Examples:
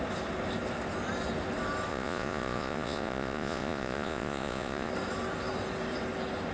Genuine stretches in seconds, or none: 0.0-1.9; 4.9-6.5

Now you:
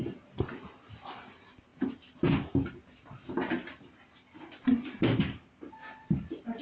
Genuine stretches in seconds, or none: 0.0-6.6